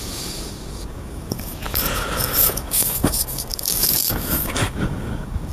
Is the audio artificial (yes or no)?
yes